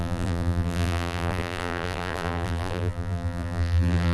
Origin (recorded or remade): remade